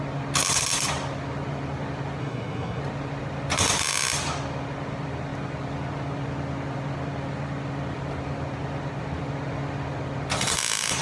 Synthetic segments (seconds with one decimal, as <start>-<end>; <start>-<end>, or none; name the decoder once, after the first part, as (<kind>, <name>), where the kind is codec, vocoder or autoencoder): 2.2-2.8 (codec, SNAC)